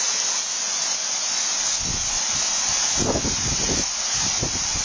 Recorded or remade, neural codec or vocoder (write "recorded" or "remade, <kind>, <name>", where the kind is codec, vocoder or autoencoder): recorded